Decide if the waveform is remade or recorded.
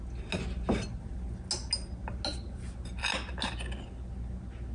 recorded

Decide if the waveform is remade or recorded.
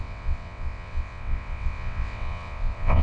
remade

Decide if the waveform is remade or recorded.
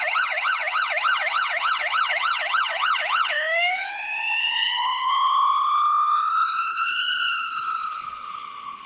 remade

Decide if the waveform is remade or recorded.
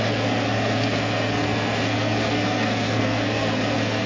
remade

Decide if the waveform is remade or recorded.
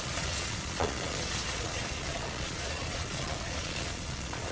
remade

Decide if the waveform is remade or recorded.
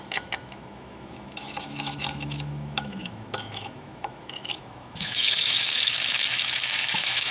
remade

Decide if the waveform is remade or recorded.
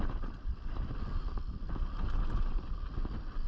recorded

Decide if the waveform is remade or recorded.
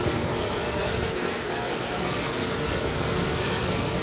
remade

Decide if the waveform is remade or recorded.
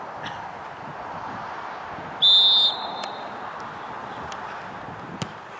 recorded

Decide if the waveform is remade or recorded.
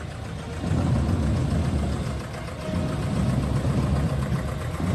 recorded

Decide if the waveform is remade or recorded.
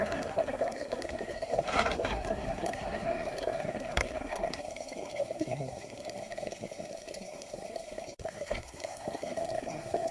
remade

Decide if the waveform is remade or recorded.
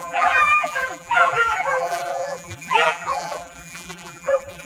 remade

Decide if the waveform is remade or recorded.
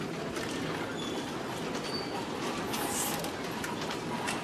recorded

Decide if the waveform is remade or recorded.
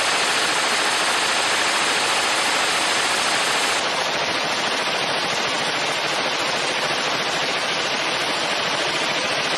recorded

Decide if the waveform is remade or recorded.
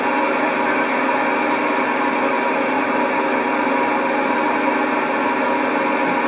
recorded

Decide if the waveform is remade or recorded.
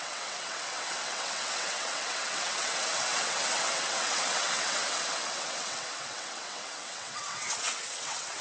remade